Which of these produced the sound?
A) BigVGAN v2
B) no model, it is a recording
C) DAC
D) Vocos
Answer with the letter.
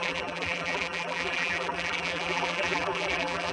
A